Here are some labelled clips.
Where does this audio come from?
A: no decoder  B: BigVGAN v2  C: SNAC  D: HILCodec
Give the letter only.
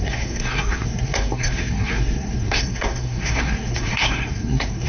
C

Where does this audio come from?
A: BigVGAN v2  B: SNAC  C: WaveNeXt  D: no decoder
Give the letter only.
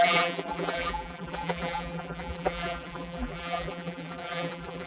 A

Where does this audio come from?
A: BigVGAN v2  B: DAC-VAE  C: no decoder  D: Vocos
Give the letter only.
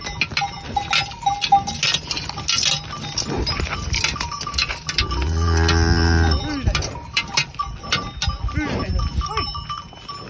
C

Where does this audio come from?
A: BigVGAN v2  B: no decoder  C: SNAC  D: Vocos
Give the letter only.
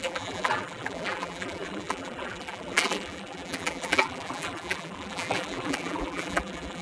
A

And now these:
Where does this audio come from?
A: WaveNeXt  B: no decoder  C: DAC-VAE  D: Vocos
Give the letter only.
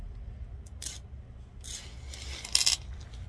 B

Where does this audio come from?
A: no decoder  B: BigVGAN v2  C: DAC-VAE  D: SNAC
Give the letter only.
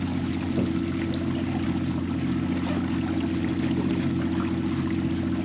A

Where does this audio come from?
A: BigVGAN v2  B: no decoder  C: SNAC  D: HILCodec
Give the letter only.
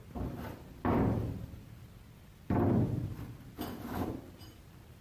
B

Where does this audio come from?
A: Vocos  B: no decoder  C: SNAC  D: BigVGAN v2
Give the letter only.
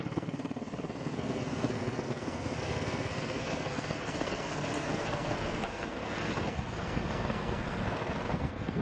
C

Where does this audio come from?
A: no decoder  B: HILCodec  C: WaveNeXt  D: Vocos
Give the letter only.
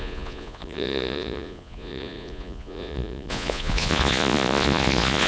D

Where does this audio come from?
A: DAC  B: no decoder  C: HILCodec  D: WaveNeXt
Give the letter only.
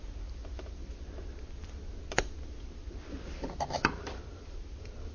B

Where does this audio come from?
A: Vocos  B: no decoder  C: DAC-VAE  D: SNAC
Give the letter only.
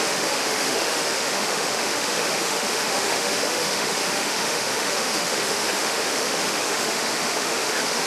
C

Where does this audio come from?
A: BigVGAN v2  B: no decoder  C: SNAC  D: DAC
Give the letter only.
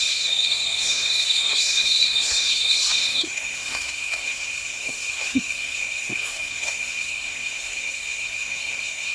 C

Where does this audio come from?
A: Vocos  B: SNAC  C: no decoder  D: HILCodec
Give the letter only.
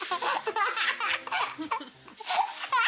C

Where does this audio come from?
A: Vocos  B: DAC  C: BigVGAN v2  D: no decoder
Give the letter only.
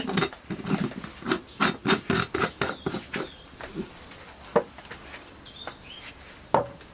D